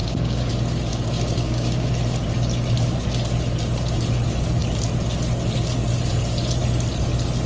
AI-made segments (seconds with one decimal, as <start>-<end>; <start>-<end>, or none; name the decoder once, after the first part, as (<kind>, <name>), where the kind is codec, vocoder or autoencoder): 0.0-0.5 (codec, DAC); 0.9-1.9